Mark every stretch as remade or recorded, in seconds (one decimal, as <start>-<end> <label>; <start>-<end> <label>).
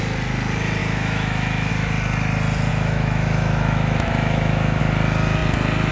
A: 0.0-0.8 recorded; 0.8-1.7 remade; 1.7-2.7 recorded; 2.7-4.8 remade; 4.8-5.9 recorded